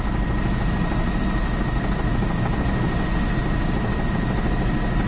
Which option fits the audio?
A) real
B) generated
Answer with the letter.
A